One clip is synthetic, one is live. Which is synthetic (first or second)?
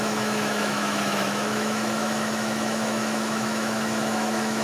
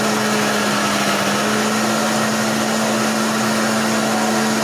first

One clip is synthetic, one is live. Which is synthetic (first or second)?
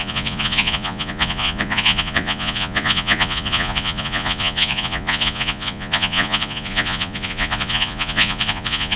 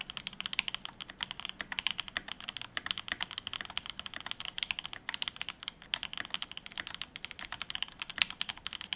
first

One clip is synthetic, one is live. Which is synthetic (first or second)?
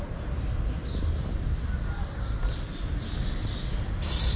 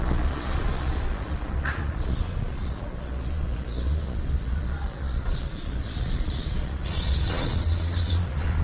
second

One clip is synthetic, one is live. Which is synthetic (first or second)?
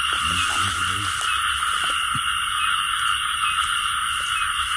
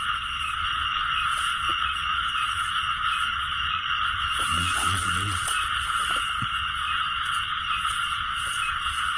second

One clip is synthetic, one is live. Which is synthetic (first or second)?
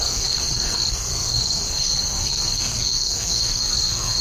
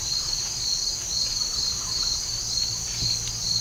first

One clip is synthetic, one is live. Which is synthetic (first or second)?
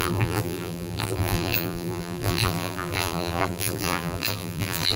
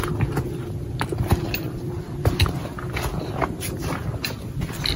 first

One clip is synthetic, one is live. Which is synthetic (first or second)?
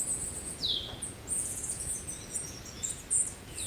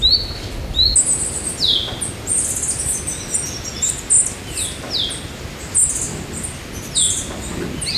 first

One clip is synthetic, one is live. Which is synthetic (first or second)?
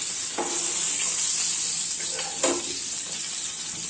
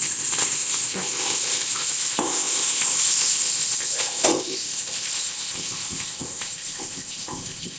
second